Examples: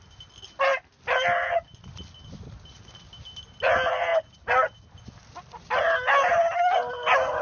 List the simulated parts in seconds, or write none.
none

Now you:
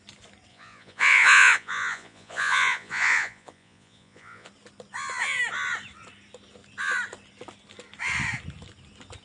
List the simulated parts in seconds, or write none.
0.5-4.5